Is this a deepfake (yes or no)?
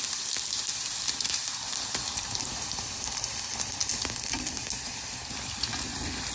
yes